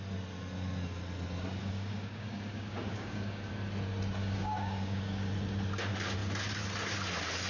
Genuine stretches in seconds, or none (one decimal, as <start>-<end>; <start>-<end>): 0.0-1.6; 3.5-4.2; 5.3-7.5